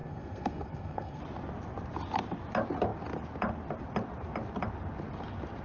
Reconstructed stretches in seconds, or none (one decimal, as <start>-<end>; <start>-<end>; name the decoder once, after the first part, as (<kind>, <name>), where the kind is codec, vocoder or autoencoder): 0.0-1.2 (codec, SNAC)